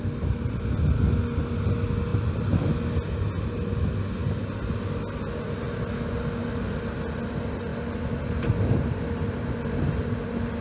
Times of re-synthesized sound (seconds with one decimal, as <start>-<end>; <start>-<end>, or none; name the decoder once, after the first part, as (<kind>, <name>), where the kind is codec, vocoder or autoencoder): 2.1-2.9 (vocoder, BigVGAN v2)